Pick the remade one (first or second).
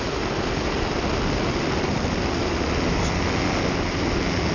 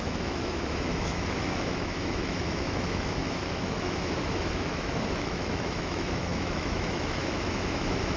second